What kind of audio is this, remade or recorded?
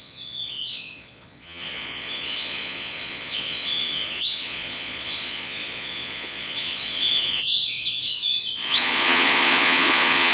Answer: remade